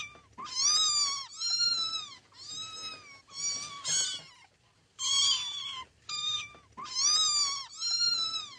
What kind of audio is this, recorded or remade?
recorded